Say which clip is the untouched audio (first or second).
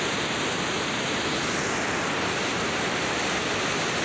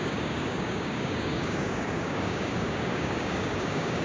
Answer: first